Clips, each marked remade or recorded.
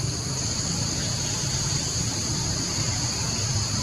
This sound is remade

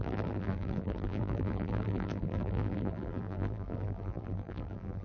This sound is remade